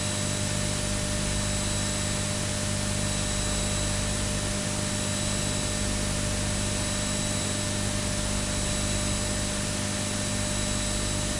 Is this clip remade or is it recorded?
recorded